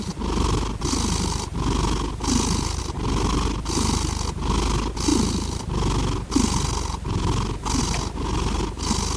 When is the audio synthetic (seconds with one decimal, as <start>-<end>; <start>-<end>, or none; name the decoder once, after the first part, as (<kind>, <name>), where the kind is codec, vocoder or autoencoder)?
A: none